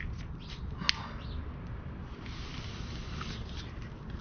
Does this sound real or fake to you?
real